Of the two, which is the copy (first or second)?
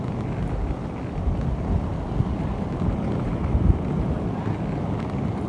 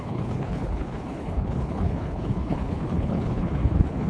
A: second